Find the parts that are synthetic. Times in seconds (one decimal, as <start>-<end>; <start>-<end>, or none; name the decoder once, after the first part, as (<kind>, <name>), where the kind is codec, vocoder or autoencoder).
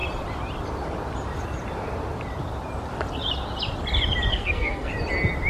4.3-4.9 (codec, SNAC)